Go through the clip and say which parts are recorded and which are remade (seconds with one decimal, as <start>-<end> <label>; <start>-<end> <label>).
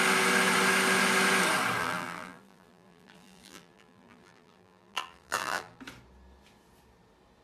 0.0-1.8 recorded; 1.8-5.8 remade; 5.8-7.4 recorded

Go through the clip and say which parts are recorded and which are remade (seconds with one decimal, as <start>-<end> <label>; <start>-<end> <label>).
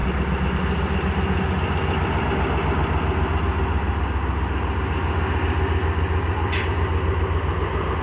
0.0-8.0 recorded